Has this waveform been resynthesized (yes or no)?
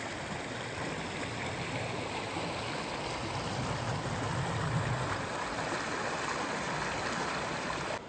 no